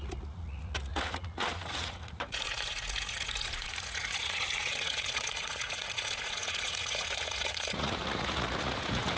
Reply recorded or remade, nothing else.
remade